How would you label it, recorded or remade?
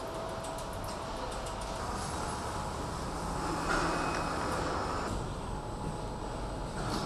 recorded